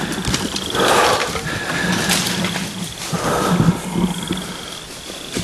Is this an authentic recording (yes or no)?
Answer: yes